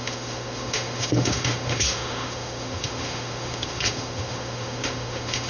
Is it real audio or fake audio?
fake